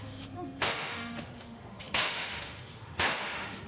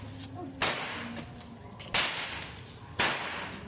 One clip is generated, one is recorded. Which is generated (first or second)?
first